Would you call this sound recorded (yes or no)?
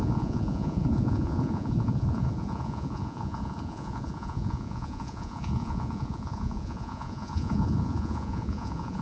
no